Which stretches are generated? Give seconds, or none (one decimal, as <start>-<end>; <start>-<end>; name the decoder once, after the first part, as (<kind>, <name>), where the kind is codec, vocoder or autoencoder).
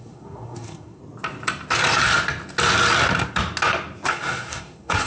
0.0-1.0 (codec, SNAC); 4.1-5.1